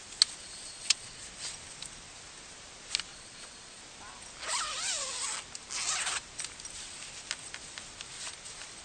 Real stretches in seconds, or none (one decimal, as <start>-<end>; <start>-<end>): 0.0-0.4; 1.2-3.1; 3.8-8.8